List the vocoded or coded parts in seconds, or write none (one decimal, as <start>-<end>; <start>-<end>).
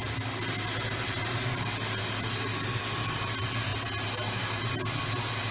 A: none